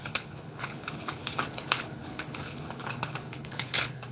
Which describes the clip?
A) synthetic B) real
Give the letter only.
A